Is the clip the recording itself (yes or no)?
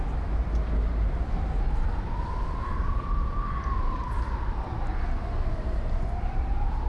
yes